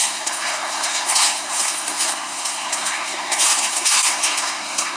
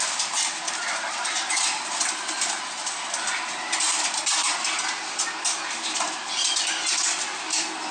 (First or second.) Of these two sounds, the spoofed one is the first